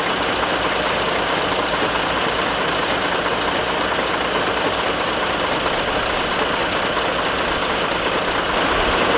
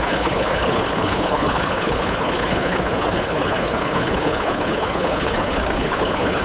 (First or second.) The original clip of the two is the first